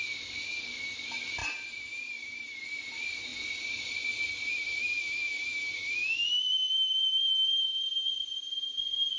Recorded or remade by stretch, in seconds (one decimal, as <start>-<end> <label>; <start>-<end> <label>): 0.0-1.4 recorded; 1.4-2.6 remade; 2.6-9.2 recorded